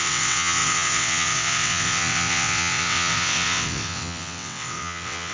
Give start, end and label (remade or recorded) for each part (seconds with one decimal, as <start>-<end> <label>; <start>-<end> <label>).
0.0-5.3 remade